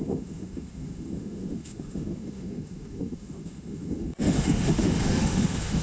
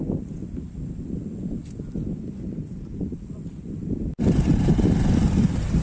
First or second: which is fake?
first